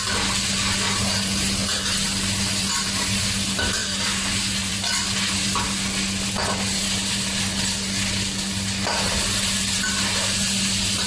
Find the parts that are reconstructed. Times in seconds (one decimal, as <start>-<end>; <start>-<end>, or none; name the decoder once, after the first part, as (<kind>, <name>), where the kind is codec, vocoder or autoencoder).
none